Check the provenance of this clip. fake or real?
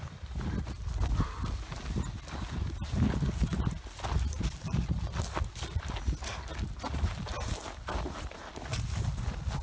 real